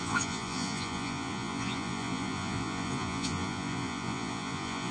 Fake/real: fake